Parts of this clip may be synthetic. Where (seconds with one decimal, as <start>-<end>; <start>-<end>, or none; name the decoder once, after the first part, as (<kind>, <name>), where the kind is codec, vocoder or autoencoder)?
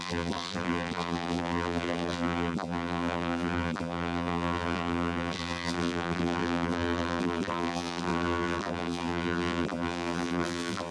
0.0-10.9 (vocoder, BigVGAN v2)